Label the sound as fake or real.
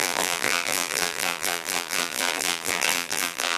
fake